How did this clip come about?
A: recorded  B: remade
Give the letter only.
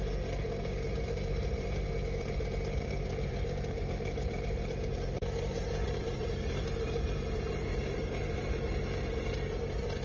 B